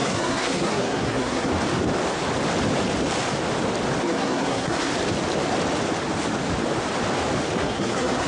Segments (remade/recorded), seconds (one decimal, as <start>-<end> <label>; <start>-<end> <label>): 0.0-1.5 remade; 1.5-4.0 recorded; 4.0-4.9 remade; 4.9-7.6 recorded; 7.6-8.3 remade